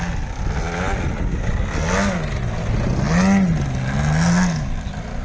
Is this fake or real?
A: real